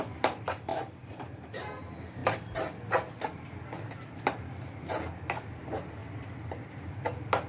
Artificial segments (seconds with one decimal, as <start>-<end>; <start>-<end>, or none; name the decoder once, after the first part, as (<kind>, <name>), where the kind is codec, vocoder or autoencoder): 0.7-1.8 (vocoder, BigVGAN v2); 6.0-6.9